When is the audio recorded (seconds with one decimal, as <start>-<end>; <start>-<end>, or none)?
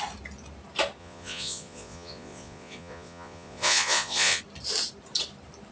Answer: 0.0-1.0; 4.4-5.7